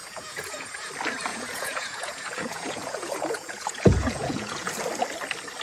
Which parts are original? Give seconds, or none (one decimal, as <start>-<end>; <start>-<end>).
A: 0.9-1.3; 4.7-5.6